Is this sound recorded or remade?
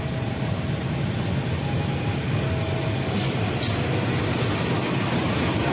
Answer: recorded